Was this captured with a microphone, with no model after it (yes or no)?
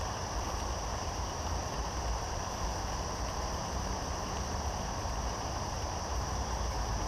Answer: no